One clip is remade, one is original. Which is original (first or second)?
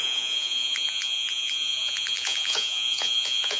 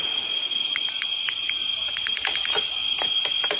second